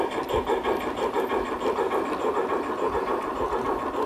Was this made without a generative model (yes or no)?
yes